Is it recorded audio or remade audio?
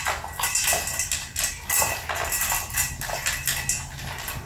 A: recorded